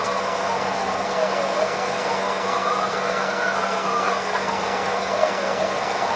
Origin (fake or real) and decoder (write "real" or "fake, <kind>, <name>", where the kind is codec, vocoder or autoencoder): fake, codec, SNAC